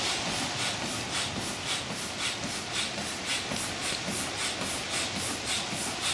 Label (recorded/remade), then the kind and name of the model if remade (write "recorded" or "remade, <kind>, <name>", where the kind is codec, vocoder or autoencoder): recorded